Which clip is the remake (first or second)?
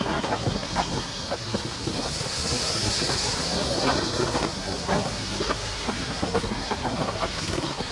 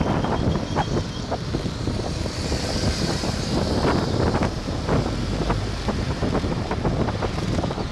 first